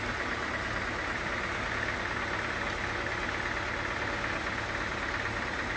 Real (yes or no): yes